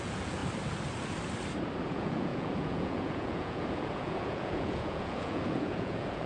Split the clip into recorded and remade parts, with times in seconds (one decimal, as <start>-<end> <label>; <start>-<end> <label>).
0.0-0.4 remade; 0.4-1.8 recorded; 1.8-6.3 remade